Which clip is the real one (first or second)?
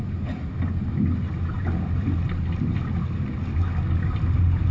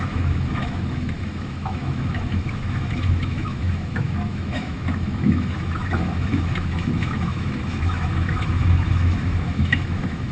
first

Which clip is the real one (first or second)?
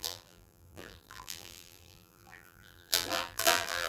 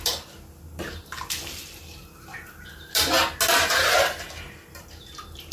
second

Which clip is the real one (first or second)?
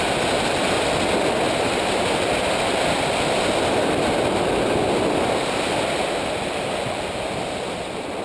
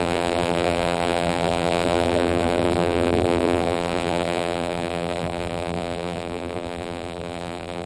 first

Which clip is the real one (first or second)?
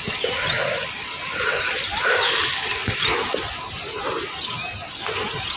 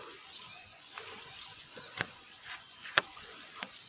first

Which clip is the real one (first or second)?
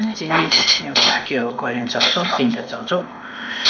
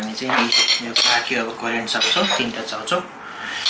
second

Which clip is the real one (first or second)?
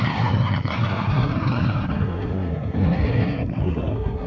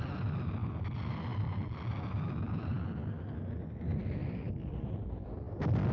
second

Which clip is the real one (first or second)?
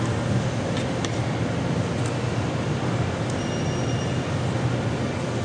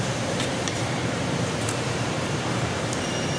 first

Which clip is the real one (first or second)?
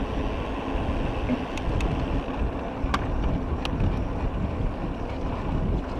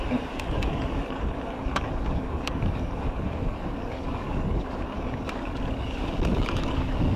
first